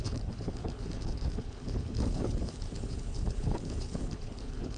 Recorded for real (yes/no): no